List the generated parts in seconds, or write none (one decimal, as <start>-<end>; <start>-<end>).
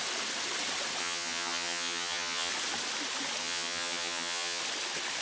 1.0-2.5; 3.4-4.6